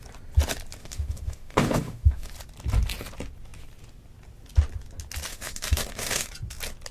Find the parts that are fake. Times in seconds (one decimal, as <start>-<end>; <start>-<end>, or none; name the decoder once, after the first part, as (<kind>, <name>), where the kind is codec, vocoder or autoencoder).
0.8-2.3 (autoencoder, DAC-VAE); 5.3-6.3